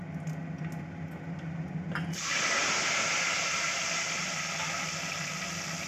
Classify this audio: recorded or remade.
recorded